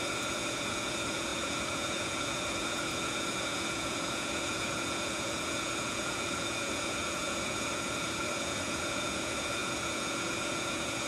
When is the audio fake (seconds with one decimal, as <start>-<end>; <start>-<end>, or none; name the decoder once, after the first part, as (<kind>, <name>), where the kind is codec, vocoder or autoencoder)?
0.0-11.1 (vocoder, Vocos)